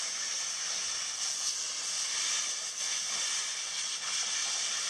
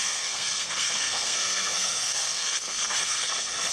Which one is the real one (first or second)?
first